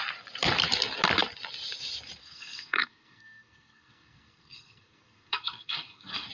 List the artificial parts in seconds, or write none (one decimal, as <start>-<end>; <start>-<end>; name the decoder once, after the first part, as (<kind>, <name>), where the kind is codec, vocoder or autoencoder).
2.2-6.3 (codec, SNAC)